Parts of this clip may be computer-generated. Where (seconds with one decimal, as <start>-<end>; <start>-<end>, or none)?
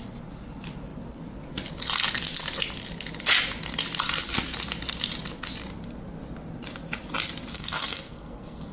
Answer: 7.5-8.7